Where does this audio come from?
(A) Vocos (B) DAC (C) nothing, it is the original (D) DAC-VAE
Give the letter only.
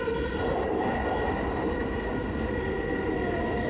C